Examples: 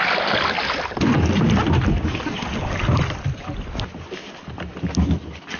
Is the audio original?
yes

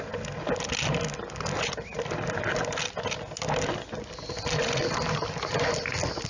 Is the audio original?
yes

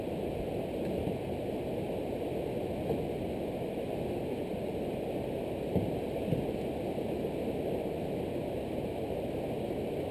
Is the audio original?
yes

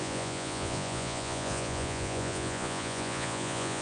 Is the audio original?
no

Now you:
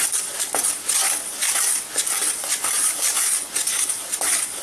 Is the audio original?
no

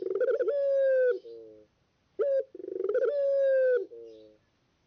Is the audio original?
yes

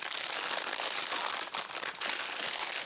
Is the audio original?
yes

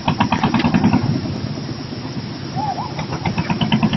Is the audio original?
yes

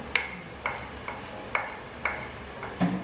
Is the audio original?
yes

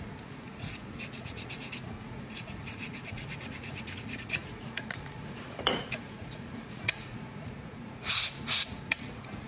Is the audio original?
no